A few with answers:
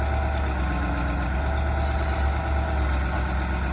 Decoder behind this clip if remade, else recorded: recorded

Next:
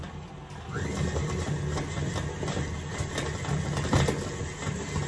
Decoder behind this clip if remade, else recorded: recorded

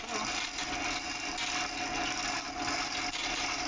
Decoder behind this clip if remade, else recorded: recorded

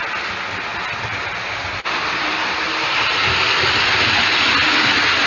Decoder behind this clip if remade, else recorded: recorded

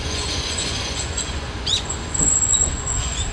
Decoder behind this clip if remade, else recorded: remade, vocoder, Vocos